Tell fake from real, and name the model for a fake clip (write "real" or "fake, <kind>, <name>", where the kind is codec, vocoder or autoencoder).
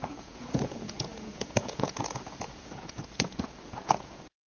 fake, vocoder, Vocos